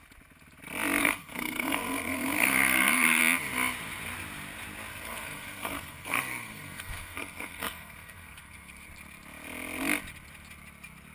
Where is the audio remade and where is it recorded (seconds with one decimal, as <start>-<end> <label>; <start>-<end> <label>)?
0.0-1.0 recorded; 1.0-3.2 remade; 3.2-4.9 recorded; 4.9-8.9 remade; 8.9-11.1 recorded